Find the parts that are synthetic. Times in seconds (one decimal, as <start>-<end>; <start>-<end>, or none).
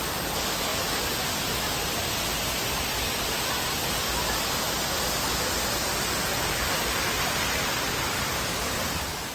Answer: none